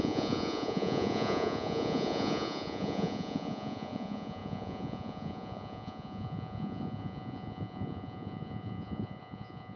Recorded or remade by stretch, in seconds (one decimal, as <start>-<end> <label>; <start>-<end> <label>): 0.0-9.8 remade